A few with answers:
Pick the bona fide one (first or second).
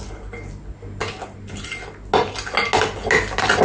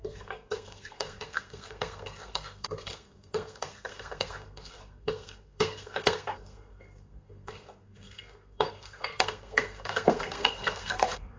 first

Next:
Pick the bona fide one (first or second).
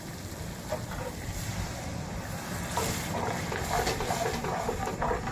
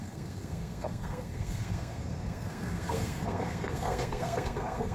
first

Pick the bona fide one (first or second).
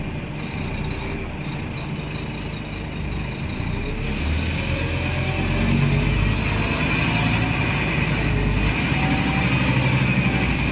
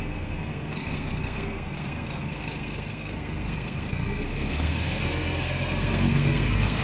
first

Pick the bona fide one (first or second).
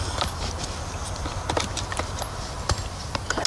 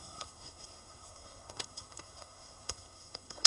first